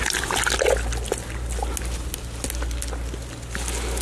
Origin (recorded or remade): recorded